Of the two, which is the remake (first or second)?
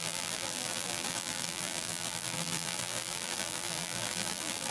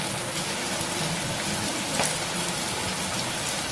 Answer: first